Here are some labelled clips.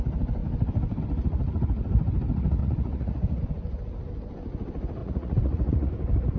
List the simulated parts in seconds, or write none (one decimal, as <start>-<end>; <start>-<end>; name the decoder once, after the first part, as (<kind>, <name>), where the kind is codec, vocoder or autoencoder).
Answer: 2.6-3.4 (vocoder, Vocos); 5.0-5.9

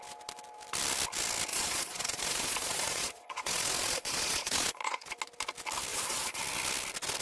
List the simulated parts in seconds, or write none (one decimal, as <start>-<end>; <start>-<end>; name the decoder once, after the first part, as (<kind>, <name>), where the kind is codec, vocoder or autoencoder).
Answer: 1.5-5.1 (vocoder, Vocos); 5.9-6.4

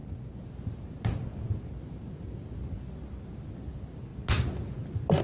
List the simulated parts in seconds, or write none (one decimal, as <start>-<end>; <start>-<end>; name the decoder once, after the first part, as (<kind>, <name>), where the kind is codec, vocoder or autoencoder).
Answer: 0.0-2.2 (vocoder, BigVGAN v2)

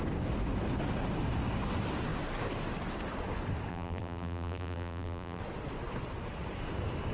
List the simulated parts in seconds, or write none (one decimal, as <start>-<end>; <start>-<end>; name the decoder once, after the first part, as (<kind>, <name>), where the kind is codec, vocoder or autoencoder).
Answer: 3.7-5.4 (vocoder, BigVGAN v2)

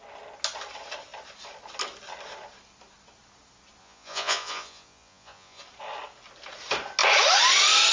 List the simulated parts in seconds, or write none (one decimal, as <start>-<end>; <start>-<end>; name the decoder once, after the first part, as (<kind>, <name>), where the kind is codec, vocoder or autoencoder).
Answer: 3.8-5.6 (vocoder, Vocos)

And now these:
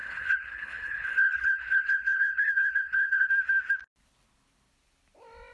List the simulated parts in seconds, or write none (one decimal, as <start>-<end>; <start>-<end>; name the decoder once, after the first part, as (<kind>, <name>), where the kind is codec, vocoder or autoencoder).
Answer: 0.0-3.3 (codec, HILCodec)

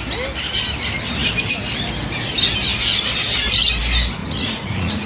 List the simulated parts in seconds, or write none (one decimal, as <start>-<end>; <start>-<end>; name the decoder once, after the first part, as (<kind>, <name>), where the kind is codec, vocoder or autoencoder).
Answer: 4.2-5.1 (vocoder, Vocos)